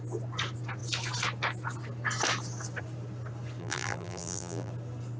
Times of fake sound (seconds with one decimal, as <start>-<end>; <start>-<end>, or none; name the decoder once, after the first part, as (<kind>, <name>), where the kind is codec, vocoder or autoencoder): 3.6-4.7 (vocoder, BigVGAN v2)